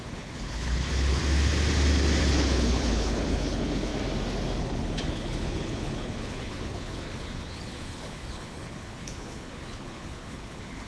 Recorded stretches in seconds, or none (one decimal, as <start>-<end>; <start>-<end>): 1.2-2.2; 3.9-4.6